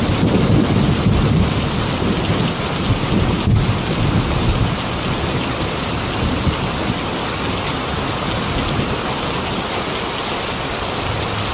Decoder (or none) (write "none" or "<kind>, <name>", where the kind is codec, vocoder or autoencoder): none